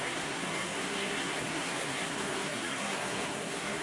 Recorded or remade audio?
remade